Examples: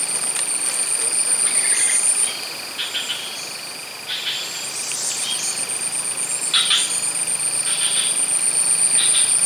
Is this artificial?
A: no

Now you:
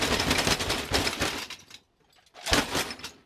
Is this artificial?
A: no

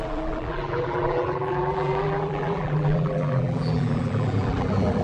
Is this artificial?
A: yes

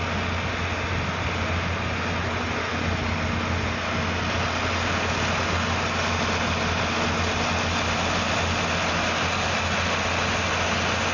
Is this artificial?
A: no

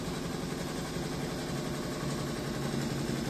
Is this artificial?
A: no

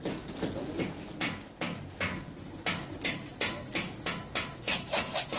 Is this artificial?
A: no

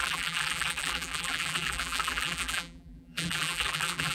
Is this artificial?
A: yes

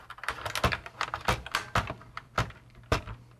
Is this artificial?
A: no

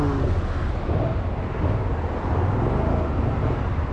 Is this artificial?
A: no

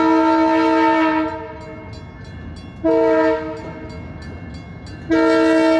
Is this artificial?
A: no